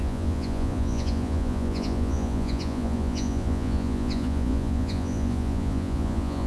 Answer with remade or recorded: remade